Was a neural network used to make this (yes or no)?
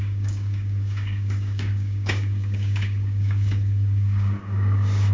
yes